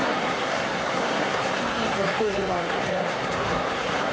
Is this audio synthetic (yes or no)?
yes